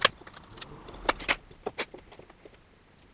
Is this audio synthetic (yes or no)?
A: no